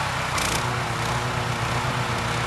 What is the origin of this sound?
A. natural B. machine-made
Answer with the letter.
A